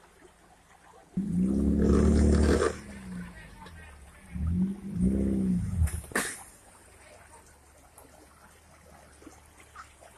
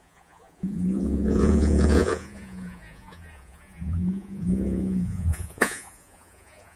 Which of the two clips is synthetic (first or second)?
second